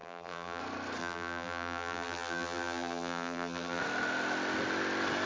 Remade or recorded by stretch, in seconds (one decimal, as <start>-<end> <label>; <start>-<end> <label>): 0.0-0.6 remade; 0.6-1.0 recorded; 1.0-3.8 remade; 3.8-5.3 recorded